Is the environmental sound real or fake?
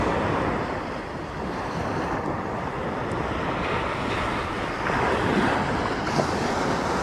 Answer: real